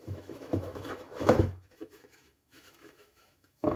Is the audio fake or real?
fake